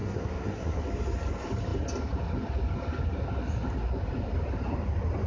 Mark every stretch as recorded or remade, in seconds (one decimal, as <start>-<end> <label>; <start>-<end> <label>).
0.0-0.8 remade; 0.8-5.3 recorded

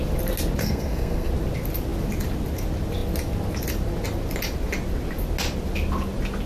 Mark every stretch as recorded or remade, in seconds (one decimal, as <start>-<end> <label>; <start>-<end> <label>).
0.0-0.6 recorded; 0.6-1.3 remade; 1.3-6.5 recorded

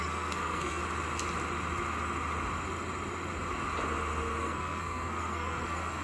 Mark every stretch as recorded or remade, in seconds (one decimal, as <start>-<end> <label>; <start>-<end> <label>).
0.0-0.8 remade; 0.8-4.4 recorded; 4.4-6.0 remade